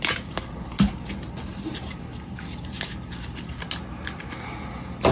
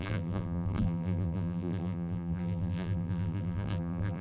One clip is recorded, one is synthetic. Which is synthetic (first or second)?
second